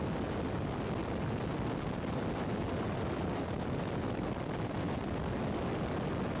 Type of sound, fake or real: real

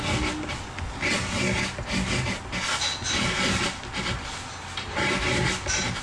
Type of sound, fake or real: real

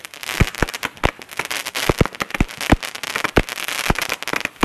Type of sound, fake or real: real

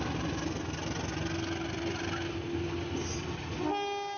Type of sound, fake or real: real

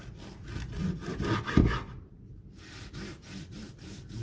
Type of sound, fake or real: real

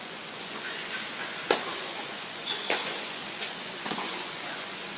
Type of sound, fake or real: fake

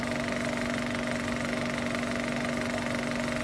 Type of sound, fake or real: real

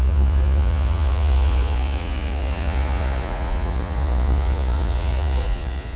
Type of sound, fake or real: fake